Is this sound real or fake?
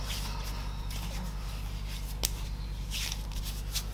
real